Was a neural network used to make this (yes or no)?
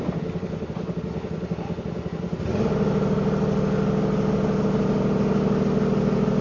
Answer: no